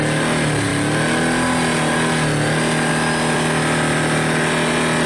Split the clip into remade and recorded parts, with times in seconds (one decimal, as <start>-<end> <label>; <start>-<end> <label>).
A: 0.0-5.1 recorded